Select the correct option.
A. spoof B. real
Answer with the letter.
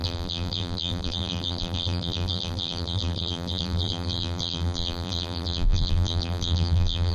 A